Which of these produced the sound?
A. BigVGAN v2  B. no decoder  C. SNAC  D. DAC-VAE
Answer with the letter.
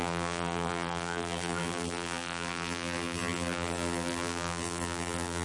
A